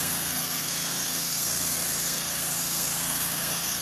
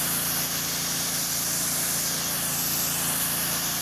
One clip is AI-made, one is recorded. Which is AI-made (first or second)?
first